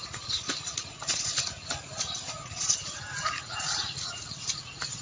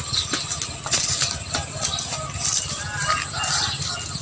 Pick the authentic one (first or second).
second